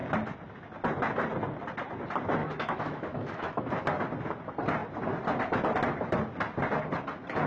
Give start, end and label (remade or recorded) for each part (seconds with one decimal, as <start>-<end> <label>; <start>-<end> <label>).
0.0-2.4 recorded; 2.4-3.6 remade; 3.6-7.5 recorded